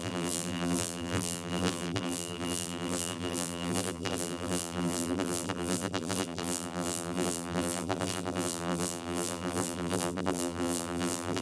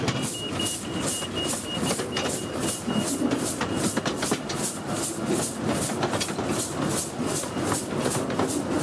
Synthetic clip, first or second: first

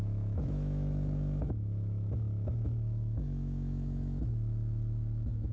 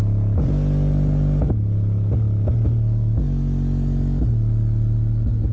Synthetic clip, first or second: first